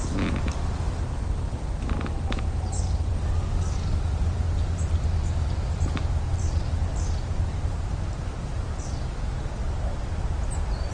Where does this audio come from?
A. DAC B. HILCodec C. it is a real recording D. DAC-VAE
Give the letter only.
C